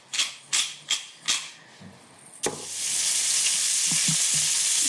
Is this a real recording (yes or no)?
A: yes